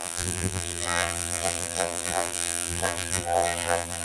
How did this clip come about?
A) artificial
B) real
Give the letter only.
A